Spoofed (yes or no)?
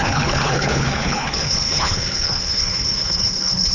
yes